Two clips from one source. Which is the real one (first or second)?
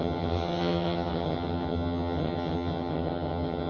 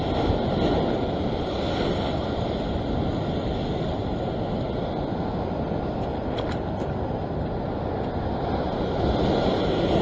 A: second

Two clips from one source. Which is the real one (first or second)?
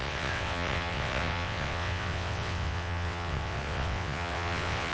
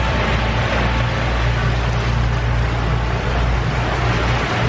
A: second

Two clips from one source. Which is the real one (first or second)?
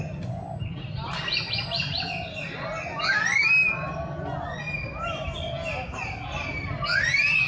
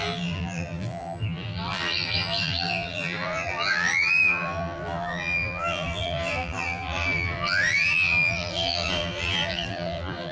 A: first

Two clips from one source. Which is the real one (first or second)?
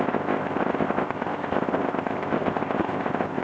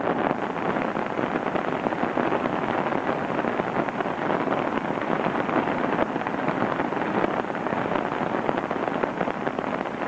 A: second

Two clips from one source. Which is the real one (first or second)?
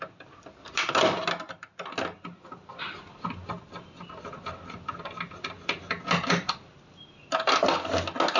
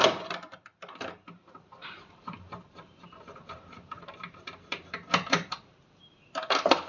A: first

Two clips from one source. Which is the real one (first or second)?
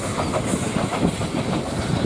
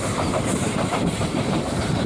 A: first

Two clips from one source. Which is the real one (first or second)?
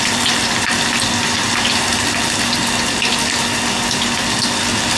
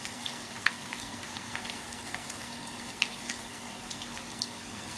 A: first